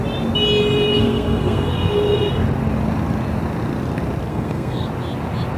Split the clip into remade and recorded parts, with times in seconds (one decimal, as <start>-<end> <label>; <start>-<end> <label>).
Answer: 0.0-1.0 recorded; 1.0-1.7 remade; 1.7-4.3 recorded; 4.3-4.9 remade; 4.9-5.6 recorded